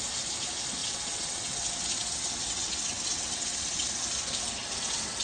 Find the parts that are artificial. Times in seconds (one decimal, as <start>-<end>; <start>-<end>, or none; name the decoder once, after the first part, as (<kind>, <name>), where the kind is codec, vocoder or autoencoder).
0.8-3.9 (vocoder, WaveNeXt); 4.6-5.2